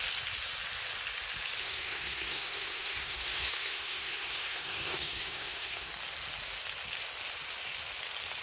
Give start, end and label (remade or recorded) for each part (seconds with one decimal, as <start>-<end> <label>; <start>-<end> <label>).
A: 0.0-1.6 recorded; 1.6-5.9 remade; 5.9-8.4 recorded